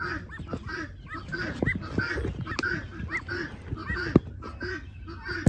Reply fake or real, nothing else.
real